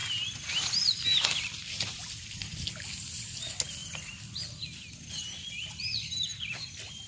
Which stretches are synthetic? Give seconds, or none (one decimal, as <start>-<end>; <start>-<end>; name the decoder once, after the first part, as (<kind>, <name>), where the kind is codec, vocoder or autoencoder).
none